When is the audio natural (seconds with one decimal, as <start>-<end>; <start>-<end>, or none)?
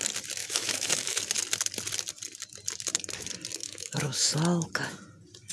0.0-0.4; 1.2-3.6; 4.3-5.5